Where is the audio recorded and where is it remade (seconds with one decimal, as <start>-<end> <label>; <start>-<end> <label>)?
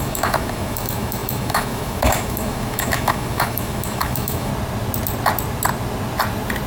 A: 0.0-4.5 remade; 4.5-6.7 recorded